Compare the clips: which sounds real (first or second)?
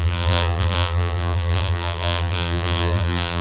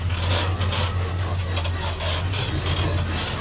second